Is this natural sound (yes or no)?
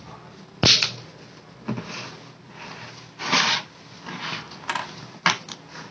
yes